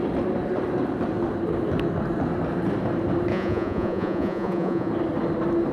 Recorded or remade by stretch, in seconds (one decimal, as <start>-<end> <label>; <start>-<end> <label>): 0.0-3.3 recorded; 3.3-4.9 remade; 4.9-5.7 recorded